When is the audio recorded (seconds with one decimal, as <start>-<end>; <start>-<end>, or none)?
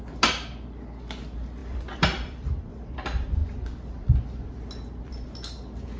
0.0-1.6; 2.7-6.0